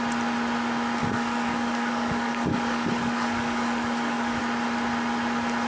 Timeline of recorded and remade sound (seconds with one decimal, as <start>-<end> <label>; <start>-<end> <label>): 0.0-1.0 recorded; 1.0-4.4 remade; 4.4-5.7 recorded